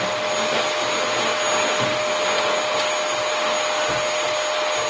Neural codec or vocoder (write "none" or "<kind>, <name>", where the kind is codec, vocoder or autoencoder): none